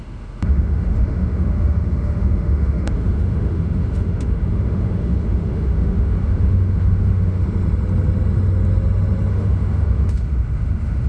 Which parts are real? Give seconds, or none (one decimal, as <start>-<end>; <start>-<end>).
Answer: 7.4-9.3